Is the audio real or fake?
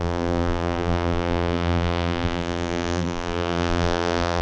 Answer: fake